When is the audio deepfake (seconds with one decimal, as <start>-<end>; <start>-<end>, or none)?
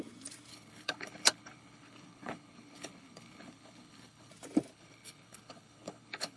0.5-4.3; 4.7-6.4